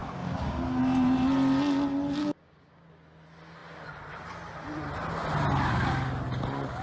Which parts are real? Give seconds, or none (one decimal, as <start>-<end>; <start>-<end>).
0.8-2.2; 2.9-6.8